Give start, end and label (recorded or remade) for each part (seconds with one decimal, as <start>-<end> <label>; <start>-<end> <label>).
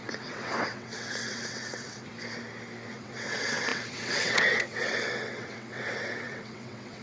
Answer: 0.0-2.1 remade; 2.1-2.9 recorded; 2.9-7.0 remade